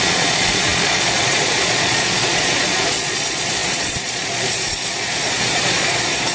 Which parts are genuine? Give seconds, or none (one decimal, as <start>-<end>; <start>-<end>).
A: none